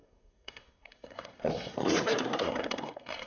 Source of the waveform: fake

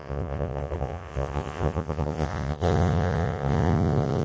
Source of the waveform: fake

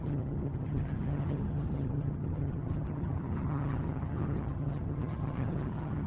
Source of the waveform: fake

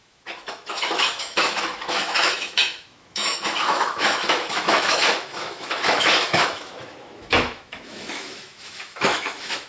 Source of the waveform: fake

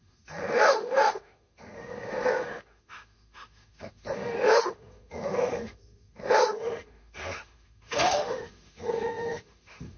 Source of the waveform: fake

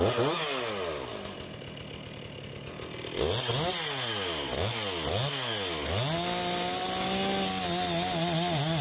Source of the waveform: real